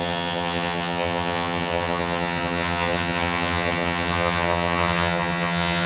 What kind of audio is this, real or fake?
fake